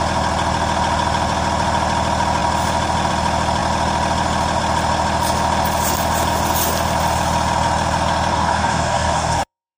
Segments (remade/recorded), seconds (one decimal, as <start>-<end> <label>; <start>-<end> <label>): 0.0-8.3 recorded; 8.3-9.8 remade